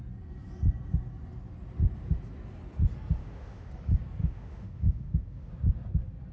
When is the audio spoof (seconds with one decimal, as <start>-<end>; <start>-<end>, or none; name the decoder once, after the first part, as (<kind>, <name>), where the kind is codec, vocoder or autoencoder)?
3.2-3.7 (autoencoder, DAC-VAE); 4.2-5.5